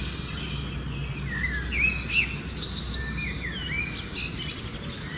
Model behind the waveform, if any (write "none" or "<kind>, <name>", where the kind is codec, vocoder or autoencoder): none